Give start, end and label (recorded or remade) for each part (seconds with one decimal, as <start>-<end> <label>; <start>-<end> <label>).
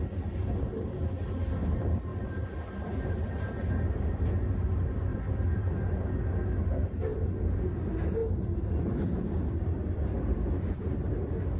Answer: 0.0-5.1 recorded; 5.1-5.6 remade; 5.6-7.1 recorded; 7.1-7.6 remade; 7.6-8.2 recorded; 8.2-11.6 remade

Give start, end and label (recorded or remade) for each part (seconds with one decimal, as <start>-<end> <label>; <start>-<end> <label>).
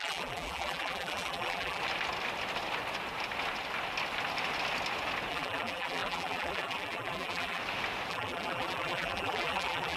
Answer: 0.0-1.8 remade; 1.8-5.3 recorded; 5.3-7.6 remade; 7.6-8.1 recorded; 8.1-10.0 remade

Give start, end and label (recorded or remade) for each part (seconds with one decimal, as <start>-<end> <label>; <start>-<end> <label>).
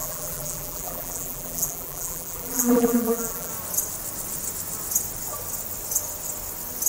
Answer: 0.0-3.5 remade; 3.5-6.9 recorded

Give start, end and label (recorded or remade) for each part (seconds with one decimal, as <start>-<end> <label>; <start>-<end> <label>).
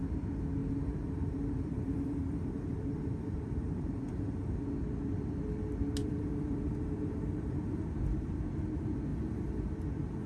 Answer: 0.0-0.6 recorded; 0.6-4.6 remade; 4.6-6.0 recorded; 6.0-7.8 remade; 7.8-9.1 recorded; 9.1-9.6 remade; 9.6-10.3 recorded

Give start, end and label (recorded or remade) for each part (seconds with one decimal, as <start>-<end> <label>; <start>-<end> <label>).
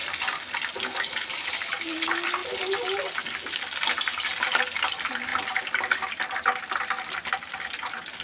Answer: 0.0-2.4 remade; 2.4-3.5 recorded; 3.5-8.2 remade